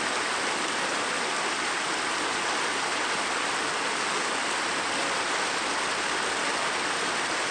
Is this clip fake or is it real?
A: real